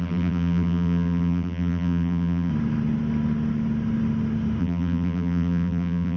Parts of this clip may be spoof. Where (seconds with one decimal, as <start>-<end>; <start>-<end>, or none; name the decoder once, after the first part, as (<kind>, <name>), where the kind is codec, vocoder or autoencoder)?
0.0-2.5 (vocoder, BigVGAN v2); 4.6-6.2